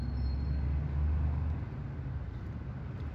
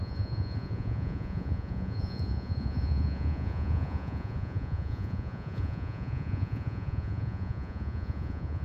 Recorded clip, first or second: first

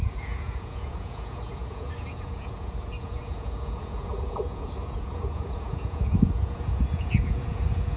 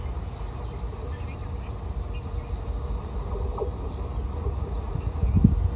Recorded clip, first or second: second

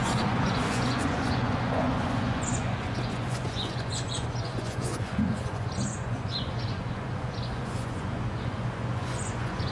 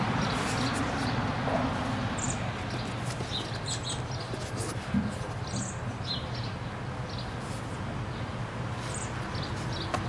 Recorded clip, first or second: second